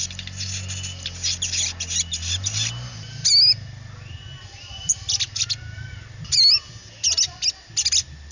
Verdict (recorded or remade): recorded